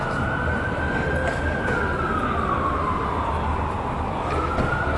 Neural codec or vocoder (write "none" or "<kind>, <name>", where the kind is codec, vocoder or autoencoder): vocoder, BigVGAN v2